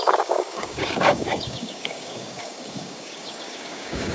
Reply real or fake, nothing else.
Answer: fake